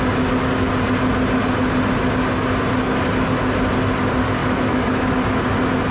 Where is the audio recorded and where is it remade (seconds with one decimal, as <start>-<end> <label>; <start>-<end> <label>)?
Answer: 0.0-4.4 recorded; 4.4-5.1 remade; 5.1-5.9 recorded